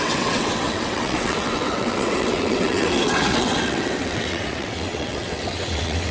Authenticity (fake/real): fake